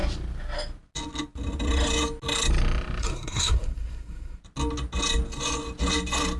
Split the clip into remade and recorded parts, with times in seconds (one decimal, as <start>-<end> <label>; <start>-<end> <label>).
0.0-3.0 recorded; 3.0-4.4 remade; 4.4-6.4 recorded